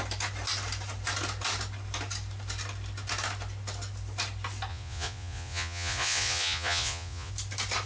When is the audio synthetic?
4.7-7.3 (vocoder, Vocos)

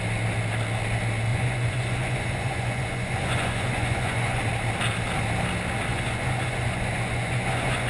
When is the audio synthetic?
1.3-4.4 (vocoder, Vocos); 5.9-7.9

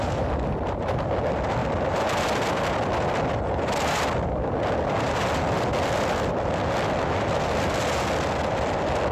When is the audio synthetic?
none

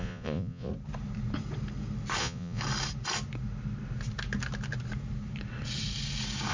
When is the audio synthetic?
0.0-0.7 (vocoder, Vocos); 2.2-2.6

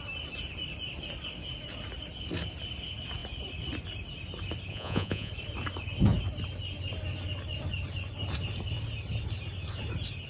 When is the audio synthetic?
4.7-5.3 (vocoder, Vocos)

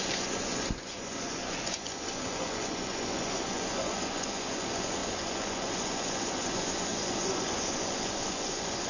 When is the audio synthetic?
0.0-8.9 (vocoder, Vocos)

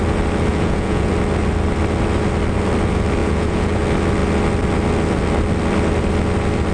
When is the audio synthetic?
0.5-1.1 (vocoder, Vocos); 3.2-3.8

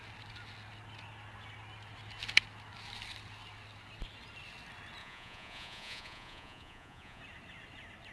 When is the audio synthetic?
5.0-7.2 (vocoder, Vocos)